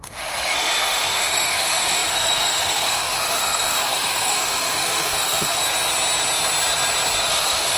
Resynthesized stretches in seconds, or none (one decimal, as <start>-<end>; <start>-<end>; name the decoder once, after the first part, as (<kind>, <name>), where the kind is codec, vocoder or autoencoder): 0.0-5.6 (autoencoder, DAC-VAE); 7.3-7.8